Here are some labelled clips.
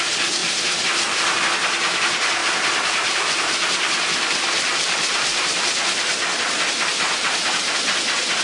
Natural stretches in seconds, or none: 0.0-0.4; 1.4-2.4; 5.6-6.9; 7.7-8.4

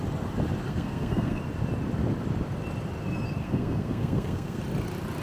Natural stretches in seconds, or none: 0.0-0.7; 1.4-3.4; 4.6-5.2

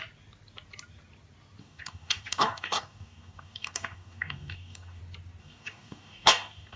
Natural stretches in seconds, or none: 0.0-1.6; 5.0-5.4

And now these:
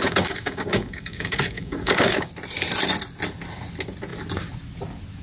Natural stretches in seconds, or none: 2.3-5.2

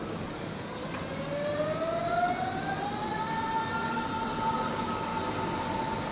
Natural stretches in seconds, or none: 0.8-3.7; 5.1-6.1

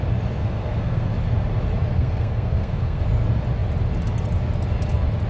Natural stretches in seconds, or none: 0.0-0.4; 1.1-1.9; 3.0-5.3